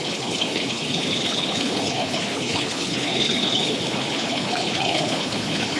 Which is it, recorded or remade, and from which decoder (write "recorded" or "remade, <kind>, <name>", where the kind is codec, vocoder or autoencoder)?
remade, codec, HILCodec